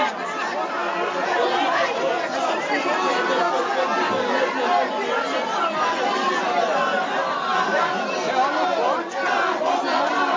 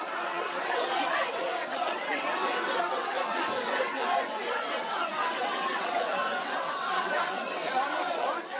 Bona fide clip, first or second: first